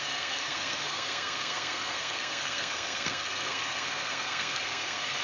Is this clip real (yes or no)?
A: no